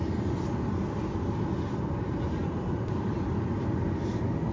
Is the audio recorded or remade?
recorded